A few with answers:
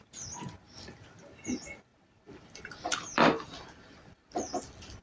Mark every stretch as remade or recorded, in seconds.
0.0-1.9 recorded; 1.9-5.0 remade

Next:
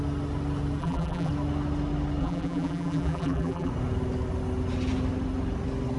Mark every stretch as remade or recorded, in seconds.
0.0-0.8 recorded; 0.8-1.3 remade; 1.3-2.2 recorded; 2.2-3.7 remade; 3.7-6.0 recorded

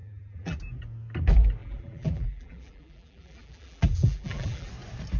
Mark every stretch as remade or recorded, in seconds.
0.0-0.6 remade; 0.6-1.6 recorded; 1.6-4.7 remade; 4.7-5.2 recorded